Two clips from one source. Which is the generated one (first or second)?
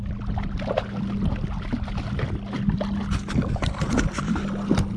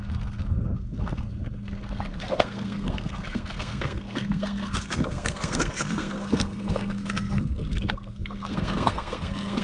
second